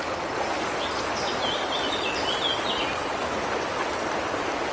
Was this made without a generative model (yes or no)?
yes